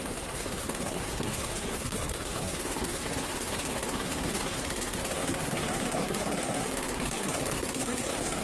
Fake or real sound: fake